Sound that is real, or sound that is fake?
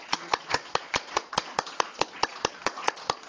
fake